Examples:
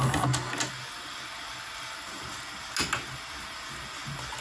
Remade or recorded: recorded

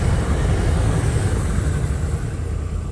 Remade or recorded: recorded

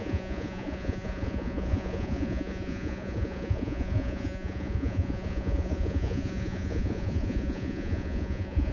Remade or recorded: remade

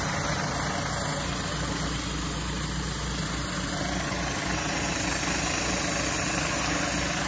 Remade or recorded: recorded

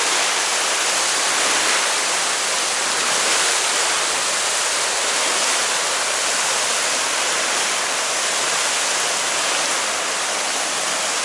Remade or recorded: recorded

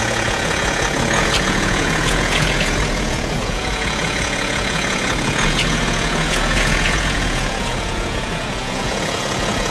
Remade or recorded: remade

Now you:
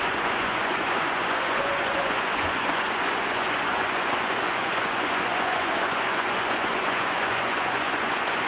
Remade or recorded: remade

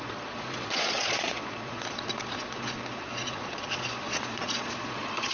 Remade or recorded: remade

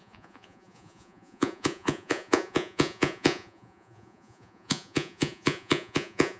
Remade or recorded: remade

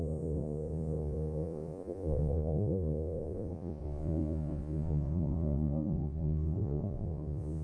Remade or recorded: remade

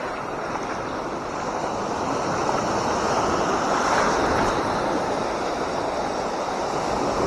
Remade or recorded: recorded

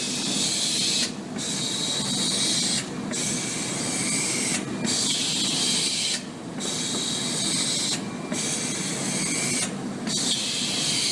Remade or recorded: recorded